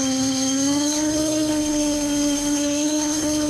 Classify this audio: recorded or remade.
remade